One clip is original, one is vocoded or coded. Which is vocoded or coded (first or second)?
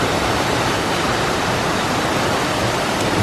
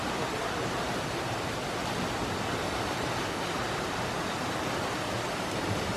first